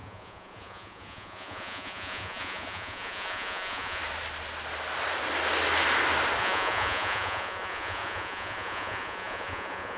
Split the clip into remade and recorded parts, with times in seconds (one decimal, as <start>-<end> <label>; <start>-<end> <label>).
0.0-4.0 remade; 4.0-6.4 recorded; 6.4-10.0 remade